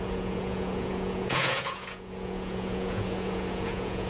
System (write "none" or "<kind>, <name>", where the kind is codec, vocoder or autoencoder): vocoder, Vocos